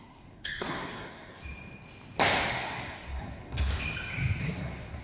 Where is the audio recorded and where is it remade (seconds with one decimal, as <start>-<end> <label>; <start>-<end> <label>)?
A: 0.0-1.3 remade; 1.3-2.5 recorded; 2.5-3.7 remade; 3.7-4.4 recorded; 4.4-5.0 remade